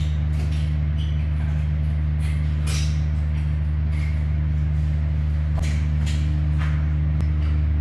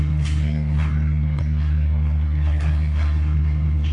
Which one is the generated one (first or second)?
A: second